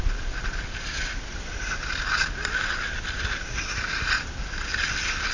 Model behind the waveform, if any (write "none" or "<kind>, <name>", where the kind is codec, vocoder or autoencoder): none